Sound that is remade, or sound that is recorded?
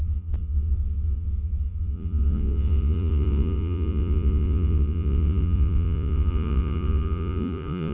remade